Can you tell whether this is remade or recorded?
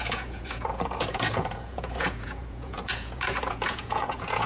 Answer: remade